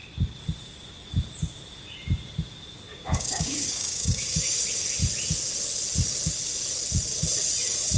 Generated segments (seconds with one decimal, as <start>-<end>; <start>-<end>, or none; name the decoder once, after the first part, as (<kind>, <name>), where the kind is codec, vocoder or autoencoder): 2.9-4.6 (codec, DAC)

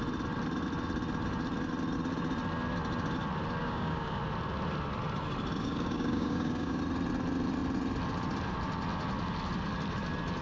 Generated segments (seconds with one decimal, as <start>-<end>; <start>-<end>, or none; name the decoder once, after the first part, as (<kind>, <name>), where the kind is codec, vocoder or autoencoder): 3.6-4.2 (codec, DAC); 5.6-6.8

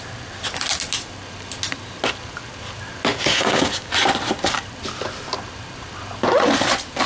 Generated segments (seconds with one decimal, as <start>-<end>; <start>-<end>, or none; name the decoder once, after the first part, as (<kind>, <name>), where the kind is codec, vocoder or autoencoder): 3.3-3.9 (codec, DAC)

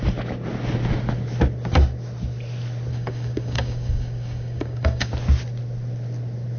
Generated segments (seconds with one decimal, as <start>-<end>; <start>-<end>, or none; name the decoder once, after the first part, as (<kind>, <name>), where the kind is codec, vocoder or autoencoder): 2.9-5.1 (codec, DAC)